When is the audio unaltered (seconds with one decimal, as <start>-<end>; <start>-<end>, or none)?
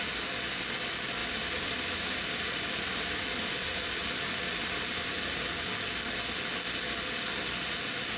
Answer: 0.0-1.2; 5.5-8.2